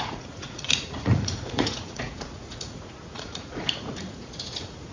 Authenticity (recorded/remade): remade